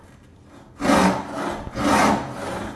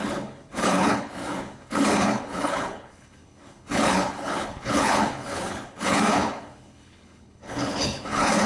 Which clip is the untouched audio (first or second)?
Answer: first